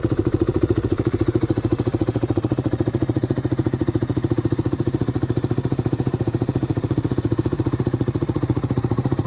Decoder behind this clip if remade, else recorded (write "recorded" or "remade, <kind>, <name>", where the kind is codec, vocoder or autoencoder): remade, vocoder, Vocos